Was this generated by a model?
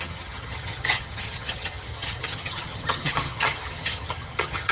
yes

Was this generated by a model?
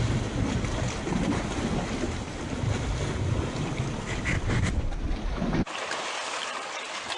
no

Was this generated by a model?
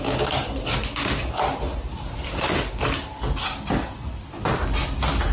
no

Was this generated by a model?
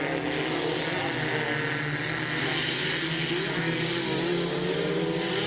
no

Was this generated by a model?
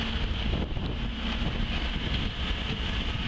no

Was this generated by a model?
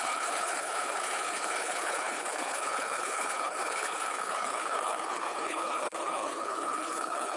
yes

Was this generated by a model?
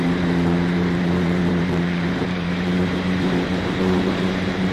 yes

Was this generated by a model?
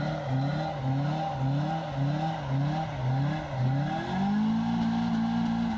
no